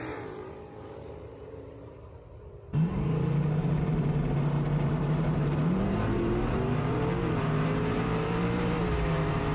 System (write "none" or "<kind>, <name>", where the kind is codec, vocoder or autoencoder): vocoder, BigVGAN v2